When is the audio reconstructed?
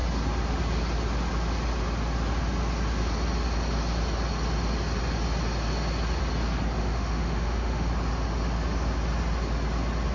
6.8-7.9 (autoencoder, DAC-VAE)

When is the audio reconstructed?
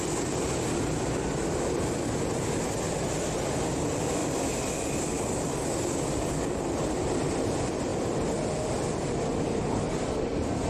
none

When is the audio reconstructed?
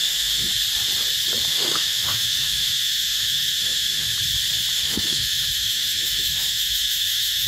0.0-0.5 (autoencoder, DAC-VAE); 1.5-4.1; 4.7-7.5